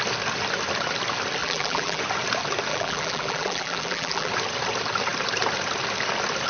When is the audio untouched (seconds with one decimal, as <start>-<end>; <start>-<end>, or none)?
0.0-1.4; 2.0-2.7; 4.3-6.5

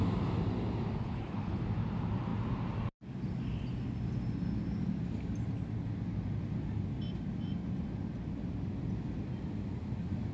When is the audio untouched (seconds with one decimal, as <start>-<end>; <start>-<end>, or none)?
0.0-1.0; 1.6-10.3

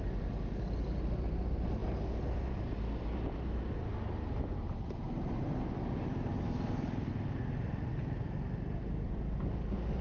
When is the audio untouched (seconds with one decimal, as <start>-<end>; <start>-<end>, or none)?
0.0-10.0

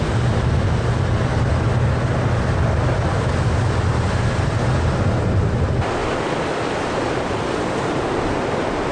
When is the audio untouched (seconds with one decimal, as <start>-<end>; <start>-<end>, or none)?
0.0-8.9

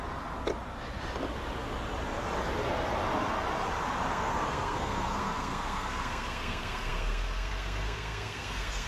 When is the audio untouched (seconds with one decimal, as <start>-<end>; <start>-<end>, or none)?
0.0-4.1

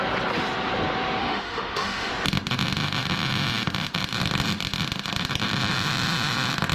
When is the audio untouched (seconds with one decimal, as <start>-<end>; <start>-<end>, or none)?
0.0-1.2; 2.1-6.7

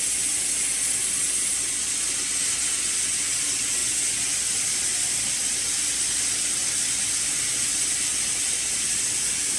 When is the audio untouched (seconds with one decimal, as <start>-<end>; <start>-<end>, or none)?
0.0-3.8; 5.3-9.6